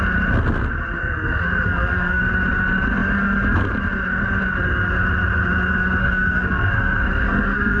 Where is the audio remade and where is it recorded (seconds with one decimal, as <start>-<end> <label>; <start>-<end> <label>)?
0.0-1.0 recorded; 1.0-2.2 remade; 2.2-6.0 recorded; 6.0-7.8 remade